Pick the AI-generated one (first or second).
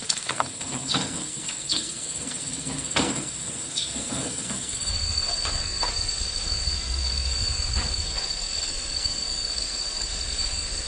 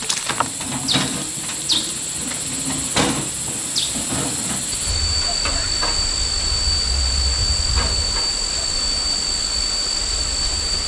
first